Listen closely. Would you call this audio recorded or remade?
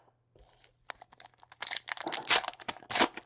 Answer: recorded